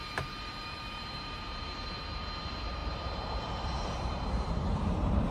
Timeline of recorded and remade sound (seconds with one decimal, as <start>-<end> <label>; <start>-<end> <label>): 0.0-5.3 remade